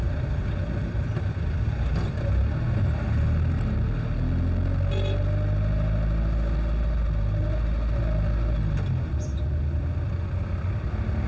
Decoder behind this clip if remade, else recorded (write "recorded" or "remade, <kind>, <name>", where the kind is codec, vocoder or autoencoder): recorded